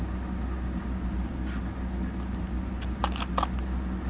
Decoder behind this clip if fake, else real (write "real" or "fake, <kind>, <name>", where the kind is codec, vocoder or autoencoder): real